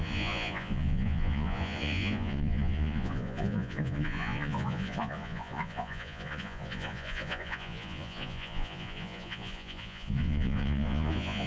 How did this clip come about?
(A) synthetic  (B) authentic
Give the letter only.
A